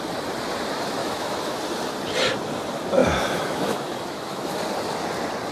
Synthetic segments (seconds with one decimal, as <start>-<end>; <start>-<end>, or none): 1.0-1.6; 3.0-4.6